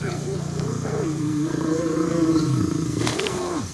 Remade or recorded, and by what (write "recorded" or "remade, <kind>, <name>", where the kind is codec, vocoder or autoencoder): remade, codec, SNAC